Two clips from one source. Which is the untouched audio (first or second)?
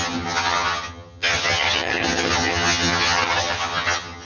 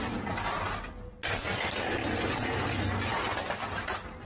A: second